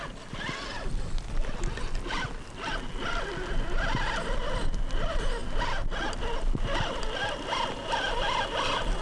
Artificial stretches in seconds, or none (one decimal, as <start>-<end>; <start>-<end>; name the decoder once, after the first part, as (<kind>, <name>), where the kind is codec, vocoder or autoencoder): none